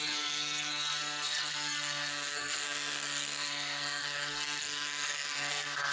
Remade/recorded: remade